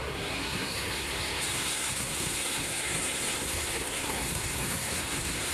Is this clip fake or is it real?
fake